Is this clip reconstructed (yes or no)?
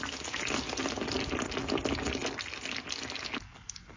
no